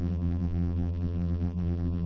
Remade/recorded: remade